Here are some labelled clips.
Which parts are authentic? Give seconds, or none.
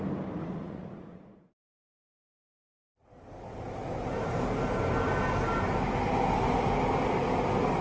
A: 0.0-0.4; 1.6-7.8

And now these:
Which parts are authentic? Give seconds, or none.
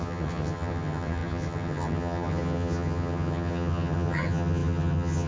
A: none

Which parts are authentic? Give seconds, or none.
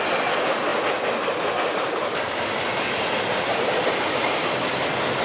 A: 0.0-5.2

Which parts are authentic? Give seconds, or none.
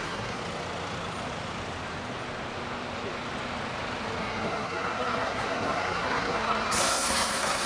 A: 0.4-4.2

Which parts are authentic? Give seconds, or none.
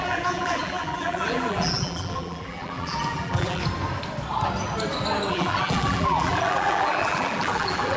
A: 3.6-5.3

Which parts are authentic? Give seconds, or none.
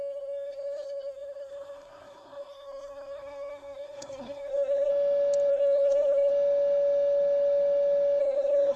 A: 4.9-5.5; 6.3-8.2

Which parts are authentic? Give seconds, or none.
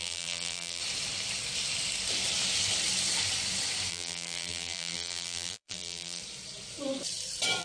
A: 0.8-3.9; 6.2-7.6